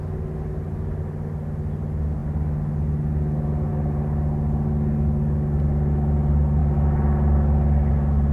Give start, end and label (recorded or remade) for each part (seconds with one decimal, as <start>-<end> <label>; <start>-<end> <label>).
0.0-8.3 recorded